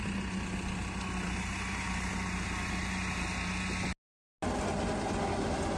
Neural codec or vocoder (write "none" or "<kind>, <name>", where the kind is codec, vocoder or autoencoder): none